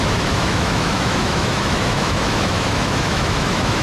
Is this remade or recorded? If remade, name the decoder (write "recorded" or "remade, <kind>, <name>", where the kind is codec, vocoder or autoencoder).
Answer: remade, autoencoder, DAC-VAE